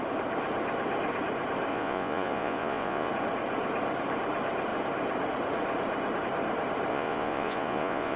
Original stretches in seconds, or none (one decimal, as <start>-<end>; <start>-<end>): 0.0-1.7; 3.1-6.9